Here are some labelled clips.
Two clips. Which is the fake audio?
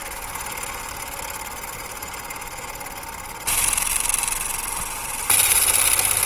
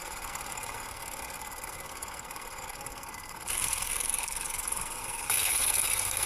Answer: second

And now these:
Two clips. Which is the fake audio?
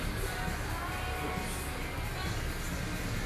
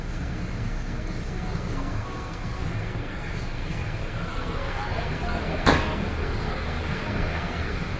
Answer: second